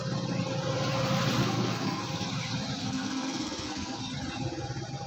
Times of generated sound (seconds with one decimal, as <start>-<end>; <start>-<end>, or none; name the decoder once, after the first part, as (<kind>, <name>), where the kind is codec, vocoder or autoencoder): 1.4-2.0 (codec, SNAC); 2.8-4.0